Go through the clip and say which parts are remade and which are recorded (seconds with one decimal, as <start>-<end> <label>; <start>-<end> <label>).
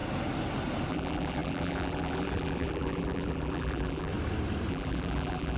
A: 0.0-0.9 recorded; 0.9-4.1 remade; 4.1-4.7 recorded; 4.7-5.6 remade